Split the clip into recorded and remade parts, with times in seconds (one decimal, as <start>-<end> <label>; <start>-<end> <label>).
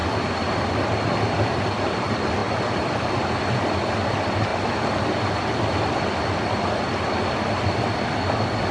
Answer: 0.0-8.7 recorded